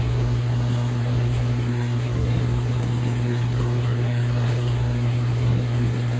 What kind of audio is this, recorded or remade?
remade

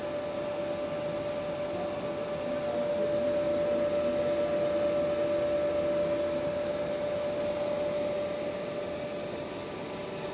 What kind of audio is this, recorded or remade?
recorded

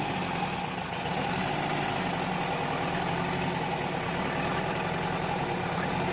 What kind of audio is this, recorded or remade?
recorded